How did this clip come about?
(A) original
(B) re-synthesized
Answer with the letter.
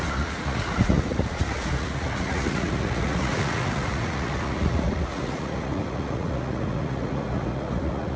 B